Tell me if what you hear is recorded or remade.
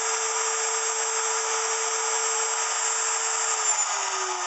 recorded